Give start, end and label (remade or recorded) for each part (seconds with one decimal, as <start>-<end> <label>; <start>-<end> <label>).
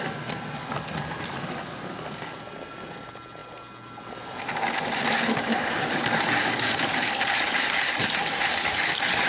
0.0-9.3 recorded